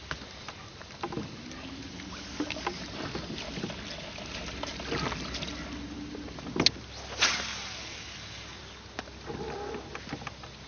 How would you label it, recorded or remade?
recorded